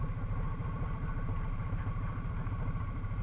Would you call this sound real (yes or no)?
yes